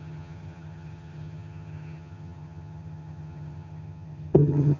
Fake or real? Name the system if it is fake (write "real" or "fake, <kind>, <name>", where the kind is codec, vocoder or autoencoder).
fake, vocoder, HiFi-GAN